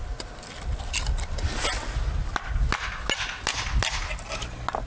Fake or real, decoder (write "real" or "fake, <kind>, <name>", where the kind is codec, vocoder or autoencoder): real